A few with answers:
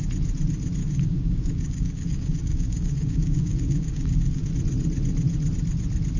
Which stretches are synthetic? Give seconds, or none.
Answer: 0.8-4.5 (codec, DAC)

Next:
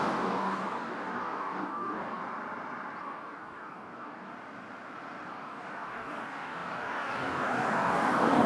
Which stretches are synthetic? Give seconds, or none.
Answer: 0.0-2.2 (codec, DAC); 3.0-4.3; 5.3-8.5

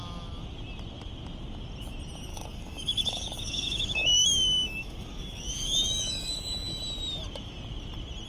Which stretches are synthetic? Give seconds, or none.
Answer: 2.3-6.8 (codec, DAC)

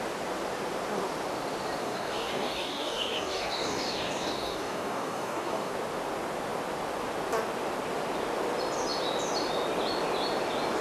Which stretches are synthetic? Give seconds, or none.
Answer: 1.8-5.7 (codec, DAC)